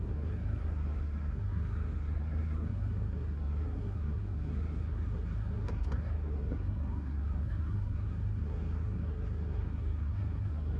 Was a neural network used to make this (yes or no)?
yes